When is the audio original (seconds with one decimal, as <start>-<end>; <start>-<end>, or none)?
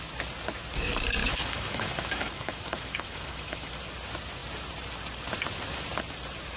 0.0-1.2; 3.7-6.6